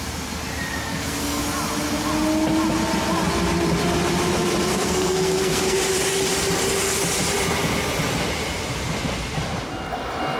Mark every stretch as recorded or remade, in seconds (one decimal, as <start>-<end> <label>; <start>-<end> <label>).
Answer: 0.0-0.9 recorded; 0.9-1.4 remade; 1.4-4.7 recorded; 4.7-5.8 remade; 5.8-10.4 recorded